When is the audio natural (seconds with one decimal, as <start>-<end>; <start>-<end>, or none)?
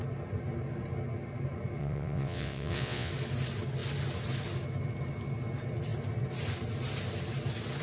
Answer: 0.0-1.8; 3.1-7.8